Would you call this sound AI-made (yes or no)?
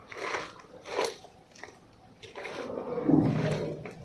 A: yes